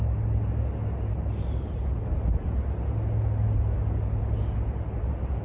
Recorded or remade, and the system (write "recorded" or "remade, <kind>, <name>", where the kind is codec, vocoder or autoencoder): recorded